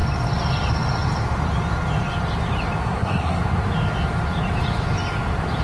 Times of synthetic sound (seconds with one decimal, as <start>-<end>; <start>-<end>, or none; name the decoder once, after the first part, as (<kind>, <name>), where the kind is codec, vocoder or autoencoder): 2.8-3.4 (codec, SNAC)